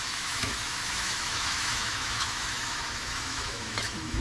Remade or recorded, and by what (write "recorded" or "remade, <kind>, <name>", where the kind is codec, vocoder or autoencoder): remade, autoencoder, DAC-VAE